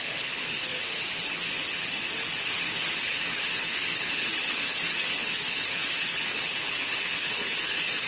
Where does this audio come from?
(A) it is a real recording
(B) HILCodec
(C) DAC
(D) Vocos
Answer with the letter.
B